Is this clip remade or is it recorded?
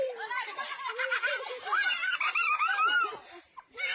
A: remade